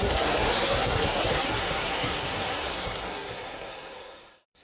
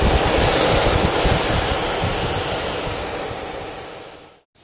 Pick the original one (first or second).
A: second